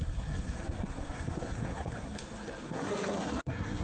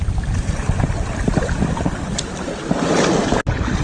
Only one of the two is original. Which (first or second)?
second